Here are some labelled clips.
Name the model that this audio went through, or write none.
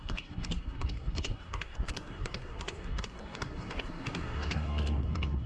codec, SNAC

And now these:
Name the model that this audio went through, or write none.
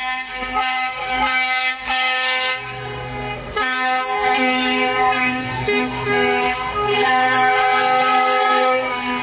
codec, SNAC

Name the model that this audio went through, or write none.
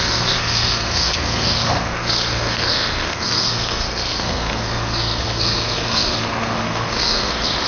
codec, SNAC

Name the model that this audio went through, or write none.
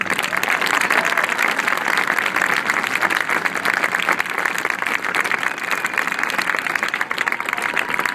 none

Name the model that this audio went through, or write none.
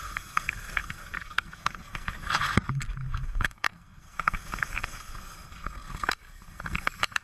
codec, SNAC